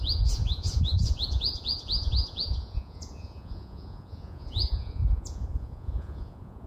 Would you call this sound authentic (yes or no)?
no